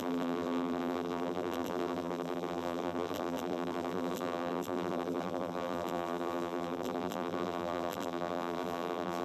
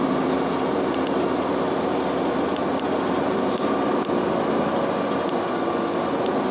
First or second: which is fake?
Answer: first